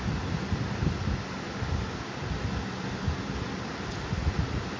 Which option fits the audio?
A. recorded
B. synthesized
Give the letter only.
A